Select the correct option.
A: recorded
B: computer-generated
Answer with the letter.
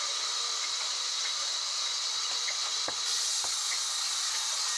A